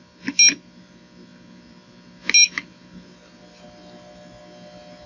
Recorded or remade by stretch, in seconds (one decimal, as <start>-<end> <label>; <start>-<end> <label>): 0.0-5.1 recorded